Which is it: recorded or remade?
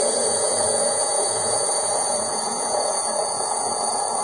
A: remade